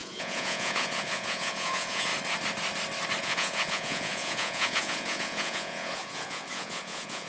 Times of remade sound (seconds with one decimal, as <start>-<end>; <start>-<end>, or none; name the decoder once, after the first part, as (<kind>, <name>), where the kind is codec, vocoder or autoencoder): 0.0-2.1 (vocoder, Vocos); 3.2-7.3